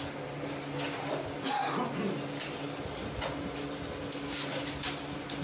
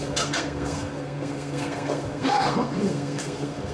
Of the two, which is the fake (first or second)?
second